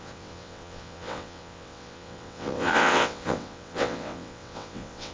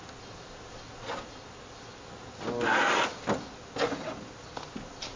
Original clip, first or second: second